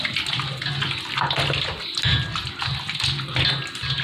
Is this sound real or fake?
real